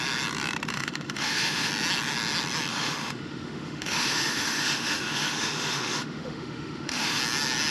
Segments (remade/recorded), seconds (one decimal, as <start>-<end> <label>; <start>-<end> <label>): 0.0-0.7 recorded; 0.7-1.7 remade; 1.7-2.7 recorded; 2.7-7.2 remade; 7.2-7.7 recorded